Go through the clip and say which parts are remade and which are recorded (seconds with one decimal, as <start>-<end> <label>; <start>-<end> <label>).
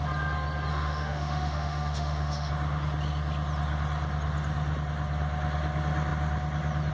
0.0-0.7 recorded; 0.7-2.5 remade; 2.5-6.9 recorded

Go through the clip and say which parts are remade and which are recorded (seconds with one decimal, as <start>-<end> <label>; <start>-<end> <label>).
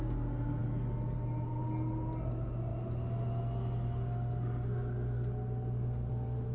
0.0-6.5 recorded